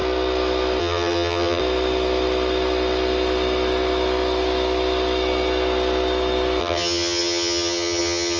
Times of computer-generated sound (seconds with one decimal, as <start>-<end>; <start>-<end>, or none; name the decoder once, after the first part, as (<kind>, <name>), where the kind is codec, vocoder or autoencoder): 0.8-1.6 (vocoder, HiFi-GAN); 6.6-8.4